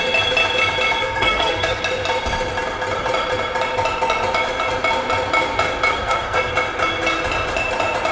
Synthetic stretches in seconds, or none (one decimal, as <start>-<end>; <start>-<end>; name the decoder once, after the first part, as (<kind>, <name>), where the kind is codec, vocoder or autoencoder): 1.0-1.8 (codec, SNAC); 5.9-6.5